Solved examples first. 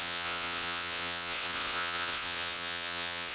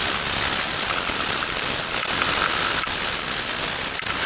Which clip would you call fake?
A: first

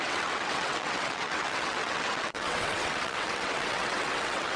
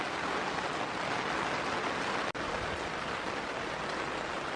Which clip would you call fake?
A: first